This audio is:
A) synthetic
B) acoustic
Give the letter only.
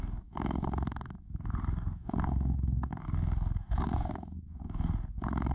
A